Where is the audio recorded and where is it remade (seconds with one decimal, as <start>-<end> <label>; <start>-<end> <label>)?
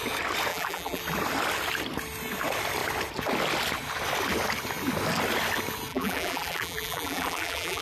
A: 0.0-0.5 recorded; 0.5-1.0 remade; 1.0-5.9 recorded; 5.9-7.8 remade